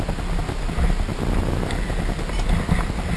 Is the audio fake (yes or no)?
no